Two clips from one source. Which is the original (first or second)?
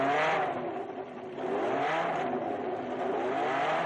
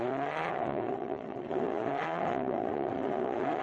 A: first